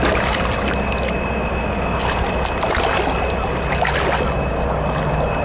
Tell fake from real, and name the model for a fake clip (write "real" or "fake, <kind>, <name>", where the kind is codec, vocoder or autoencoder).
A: real